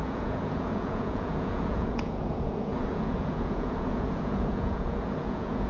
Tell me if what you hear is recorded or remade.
remade